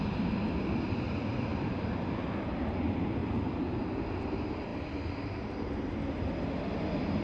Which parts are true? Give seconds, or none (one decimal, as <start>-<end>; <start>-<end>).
0.0-1.5; 2.2-3.2; 3.8-7.2